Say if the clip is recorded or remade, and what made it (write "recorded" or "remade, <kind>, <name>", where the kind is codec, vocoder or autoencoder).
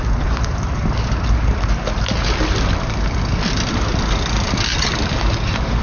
recorded